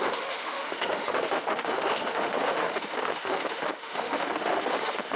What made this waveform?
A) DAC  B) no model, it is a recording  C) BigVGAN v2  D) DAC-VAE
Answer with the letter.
D